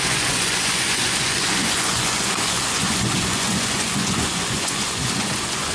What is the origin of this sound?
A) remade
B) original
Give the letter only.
A